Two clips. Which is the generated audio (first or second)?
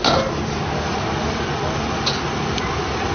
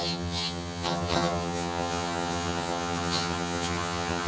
second